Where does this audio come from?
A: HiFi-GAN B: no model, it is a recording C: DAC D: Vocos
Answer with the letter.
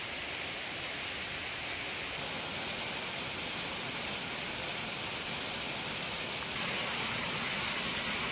B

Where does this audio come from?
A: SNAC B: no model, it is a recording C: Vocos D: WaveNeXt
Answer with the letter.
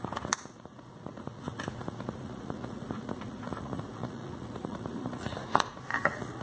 C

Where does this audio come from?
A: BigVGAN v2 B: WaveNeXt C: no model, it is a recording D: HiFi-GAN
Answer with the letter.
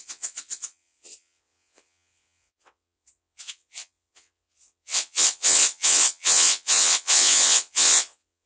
B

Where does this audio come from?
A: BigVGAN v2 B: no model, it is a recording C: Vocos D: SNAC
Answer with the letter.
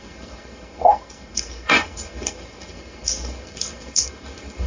D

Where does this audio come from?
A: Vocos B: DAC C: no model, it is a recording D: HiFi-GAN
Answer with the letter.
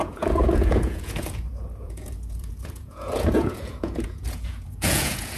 A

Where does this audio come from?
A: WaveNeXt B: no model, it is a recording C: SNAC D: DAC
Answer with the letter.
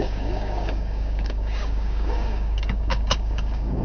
D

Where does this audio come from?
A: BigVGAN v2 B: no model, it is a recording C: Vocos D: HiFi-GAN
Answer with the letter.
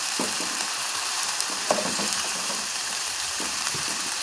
A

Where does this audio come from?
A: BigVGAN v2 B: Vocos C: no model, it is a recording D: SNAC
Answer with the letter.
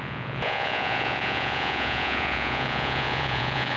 B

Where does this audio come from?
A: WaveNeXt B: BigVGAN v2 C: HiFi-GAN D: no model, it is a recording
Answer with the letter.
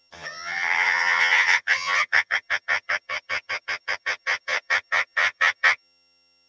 C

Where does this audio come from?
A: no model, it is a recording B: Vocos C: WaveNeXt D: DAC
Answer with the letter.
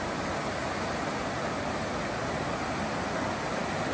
A